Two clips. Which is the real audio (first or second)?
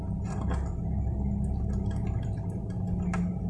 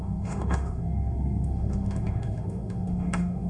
first